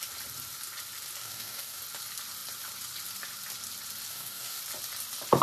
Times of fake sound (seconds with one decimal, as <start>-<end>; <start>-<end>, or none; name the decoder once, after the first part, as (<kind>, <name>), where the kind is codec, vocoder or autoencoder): 1.2-1.8 (codec, DAC); 4.1-4.6